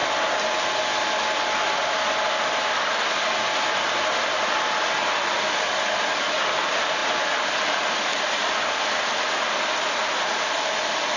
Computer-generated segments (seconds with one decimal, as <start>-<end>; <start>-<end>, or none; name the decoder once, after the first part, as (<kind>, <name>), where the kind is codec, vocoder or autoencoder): none